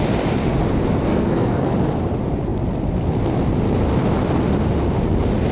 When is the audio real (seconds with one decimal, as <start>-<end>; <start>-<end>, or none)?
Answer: 0.0-1.1; 1.7-5.5